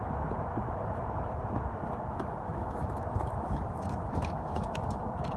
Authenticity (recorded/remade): remade